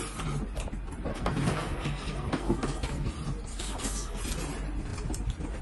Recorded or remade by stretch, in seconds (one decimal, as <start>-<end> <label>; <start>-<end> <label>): 0.0-1.1 recorded; 1.1-3.1 remade; 3.1-3.5 recorded; 3.5-4.2 remade; 4.2-5.6 recorded